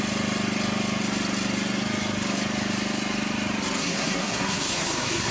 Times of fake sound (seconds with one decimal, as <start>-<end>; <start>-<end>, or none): 3.8-5.3